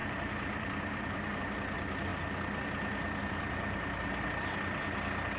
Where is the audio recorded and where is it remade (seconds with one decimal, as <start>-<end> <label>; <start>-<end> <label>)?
0.0-1.4 remade; 1.4-5.4 recorded